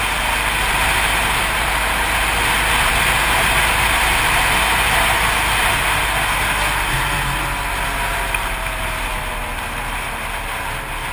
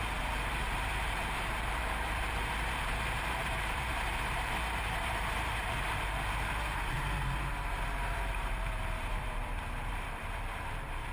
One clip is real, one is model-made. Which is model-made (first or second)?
second